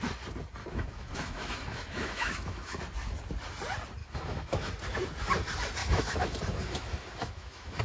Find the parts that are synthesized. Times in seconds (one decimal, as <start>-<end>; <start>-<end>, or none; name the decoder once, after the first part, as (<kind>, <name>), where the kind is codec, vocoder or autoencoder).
0.6-2.8 (autoencoder, DAC-VAE); 4.0-4.7; 5.8-7.8